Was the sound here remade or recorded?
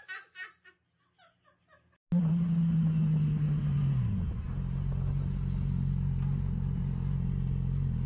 recorded